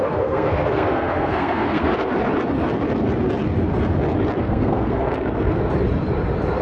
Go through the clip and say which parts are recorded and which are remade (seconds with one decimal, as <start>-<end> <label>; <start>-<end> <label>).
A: 0.0-1.9 remade; 1.9-4.4 recorded; 4.4-5.7 remade; 5.7-6.6 recorded